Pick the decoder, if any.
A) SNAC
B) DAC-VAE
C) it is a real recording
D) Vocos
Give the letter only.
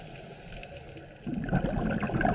C